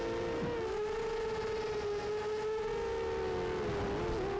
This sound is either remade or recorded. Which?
recorded